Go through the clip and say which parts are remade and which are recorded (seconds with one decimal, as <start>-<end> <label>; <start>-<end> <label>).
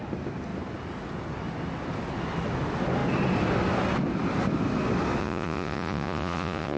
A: 0.0-5.2 recorded; 5.2-6.8 remade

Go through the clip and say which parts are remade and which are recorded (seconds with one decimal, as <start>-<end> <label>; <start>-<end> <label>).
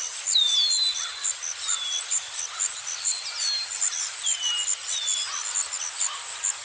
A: 0.0-6.6 recorded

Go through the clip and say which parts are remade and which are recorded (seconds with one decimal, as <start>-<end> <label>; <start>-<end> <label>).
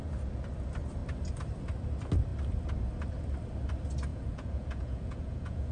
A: 0.0-4.1 recorded; 4.1-5.7 remade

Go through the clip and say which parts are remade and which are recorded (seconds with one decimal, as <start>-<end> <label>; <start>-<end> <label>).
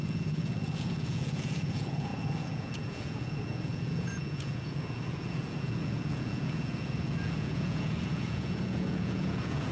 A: 0.0-9.7 remade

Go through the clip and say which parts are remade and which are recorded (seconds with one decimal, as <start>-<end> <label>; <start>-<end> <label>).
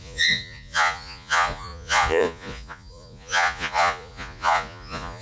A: 0.0-5.2 remade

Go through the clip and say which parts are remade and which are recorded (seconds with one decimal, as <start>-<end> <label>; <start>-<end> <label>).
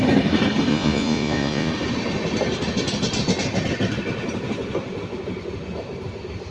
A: 0.0-0.7 recorded; 0.7-1.7 remade; 1.7-6.5 recorded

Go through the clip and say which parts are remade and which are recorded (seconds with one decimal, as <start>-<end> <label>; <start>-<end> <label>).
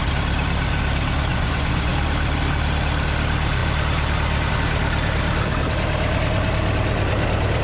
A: 0.0-1.3 recorded; 1.3-1.9 remade; 1.9-7.6 recorded